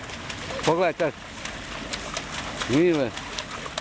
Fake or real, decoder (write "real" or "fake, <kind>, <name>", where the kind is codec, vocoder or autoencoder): real